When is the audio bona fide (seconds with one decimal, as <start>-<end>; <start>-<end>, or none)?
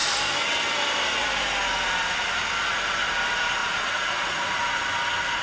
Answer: 0.0-3.6; 4.6-5.4